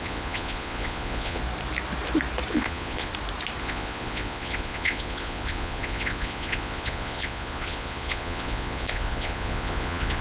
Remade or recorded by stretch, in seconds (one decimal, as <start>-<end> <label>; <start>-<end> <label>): 0.0-1.4 remade; 1.4-2.5 recorded; 2.5-3.1 remade; 3.1-3.6 recorded; 3.6-10.2 remade